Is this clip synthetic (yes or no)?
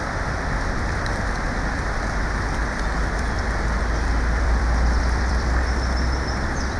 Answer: yes